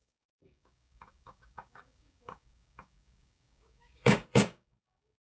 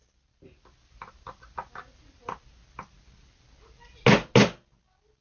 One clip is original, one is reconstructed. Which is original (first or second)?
second